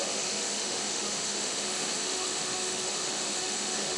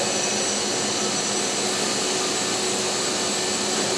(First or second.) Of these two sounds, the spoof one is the first